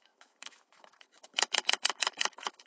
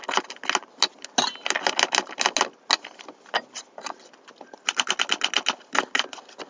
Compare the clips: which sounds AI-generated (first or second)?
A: first